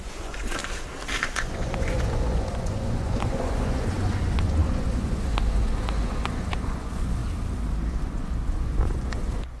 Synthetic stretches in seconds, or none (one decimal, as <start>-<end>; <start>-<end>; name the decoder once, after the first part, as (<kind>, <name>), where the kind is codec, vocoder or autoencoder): 0.0-0.6 (vocoder, Vocos); 1.2-7.2; 7.9-9.6